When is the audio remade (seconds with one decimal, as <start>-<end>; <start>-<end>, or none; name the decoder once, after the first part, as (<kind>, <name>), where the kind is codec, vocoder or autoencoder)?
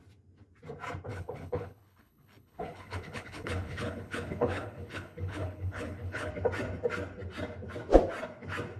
1.1-6.3 (codec, HILCodec)